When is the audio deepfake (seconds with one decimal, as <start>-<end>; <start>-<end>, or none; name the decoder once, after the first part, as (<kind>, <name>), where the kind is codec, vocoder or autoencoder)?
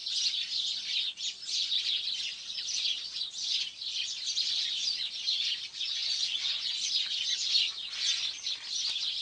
6.0-6.7 (vocoder, Vocos)